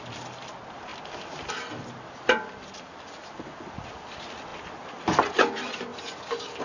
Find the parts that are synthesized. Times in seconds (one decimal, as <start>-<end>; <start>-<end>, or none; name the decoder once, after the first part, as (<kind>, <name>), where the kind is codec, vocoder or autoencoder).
none